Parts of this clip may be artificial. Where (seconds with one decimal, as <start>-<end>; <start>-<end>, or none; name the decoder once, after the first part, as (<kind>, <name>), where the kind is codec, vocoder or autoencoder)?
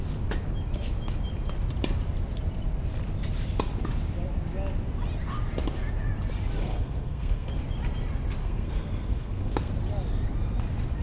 6.6-7.5 (codec, SNAC); 8.4-9.7